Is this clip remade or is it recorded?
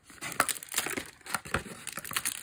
recorded